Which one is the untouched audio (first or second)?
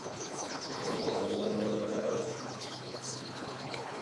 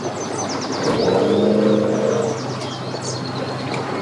second